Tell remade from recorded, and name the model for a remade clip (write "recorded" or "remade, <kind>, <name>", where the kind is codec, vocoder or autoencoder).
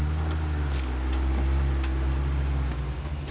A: recorded